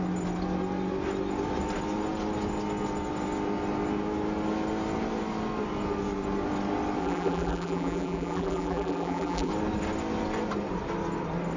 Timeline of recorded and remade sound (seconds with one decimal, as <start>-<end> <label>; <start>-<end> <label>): 0.0-7.0 recorded; 7.0-9.5 remade; 9.5-11.6 recorded